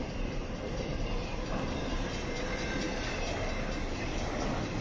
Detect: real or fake real